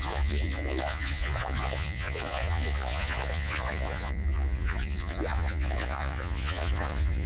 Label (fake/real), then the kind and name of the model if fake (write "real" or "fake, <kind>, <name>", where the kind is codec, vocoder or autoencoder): fake, vocoder, Vocos